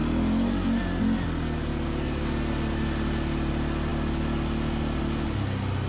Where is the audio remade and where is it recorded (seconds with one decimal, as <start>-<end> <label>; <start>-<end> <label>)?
0.0-5.9 recorded

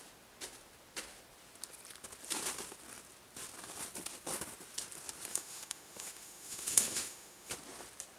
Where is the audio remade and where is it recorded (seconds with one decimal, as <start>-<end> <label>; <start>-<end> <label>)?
0.0-5.3 recorded; 5.3-7.5 remade; 7.5-8.2 recorded